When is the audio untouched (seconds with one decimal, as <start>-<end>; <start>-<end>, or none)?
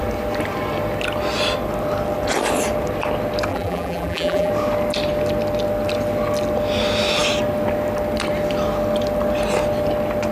0.0-3.5; 4.5-10.3